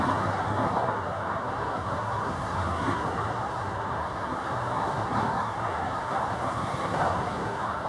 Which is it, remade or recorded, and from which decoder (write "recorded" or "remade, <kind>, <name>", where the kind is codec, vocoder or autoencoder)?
remade, codec, SNAC